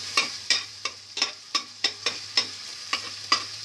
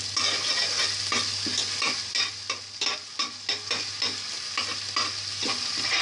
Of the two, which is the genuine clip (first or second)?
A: second